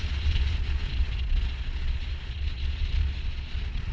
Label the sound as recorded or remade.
remade